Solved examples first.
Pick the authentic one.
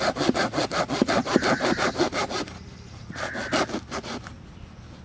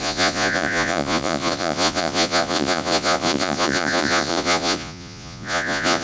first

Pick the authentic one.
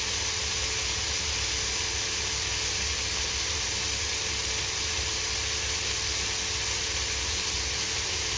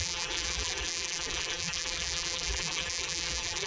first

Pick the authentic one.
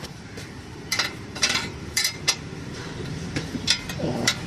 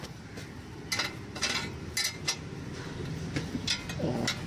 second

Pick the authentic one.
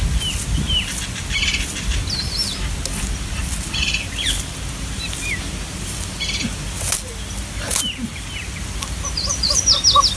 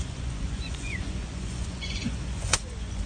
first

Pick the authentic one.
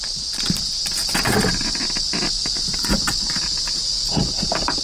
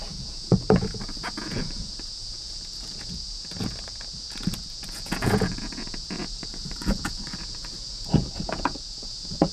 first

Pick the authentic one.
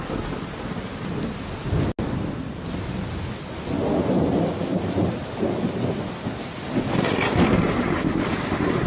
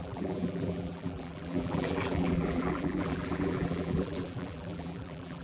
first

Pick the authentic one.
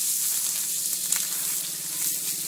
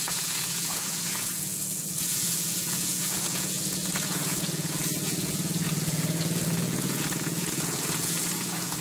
first